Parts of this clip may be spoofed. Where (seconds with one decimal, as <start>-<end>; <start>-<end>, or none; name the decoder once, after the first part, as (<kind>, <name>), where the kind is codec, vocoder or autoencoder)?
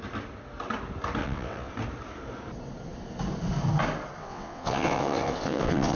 1.2-1.7 (vocoder, WaveNeXt); 4.2-6.0